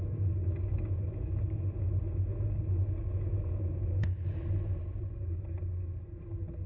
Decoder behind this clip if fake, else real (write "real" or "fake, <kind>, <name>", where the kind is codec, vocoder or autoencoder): real